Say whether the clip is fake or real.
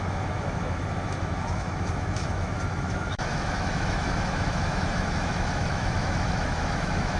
fake